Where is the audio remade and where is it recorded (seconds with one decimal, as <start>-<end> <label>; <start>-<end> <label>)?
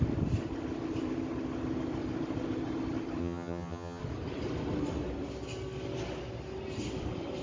0.0-3.2 recorded; 3.2-4.0 remade; 4.0-7.4 recorded